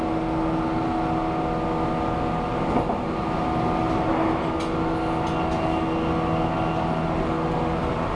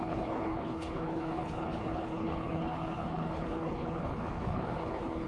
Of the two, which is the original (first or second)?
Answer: first